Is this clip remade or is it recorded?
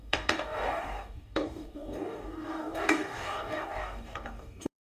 remade